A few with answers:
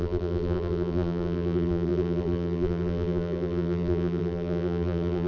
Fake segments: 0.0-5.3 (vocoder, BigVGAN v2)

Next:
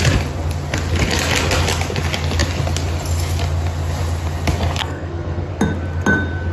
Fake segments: 4.8-5.5 (codec, SNAC)